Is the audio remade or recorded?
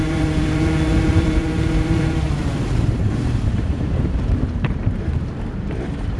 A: remade